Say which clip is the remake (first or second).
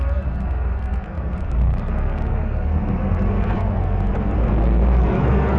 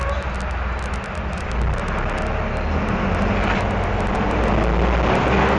first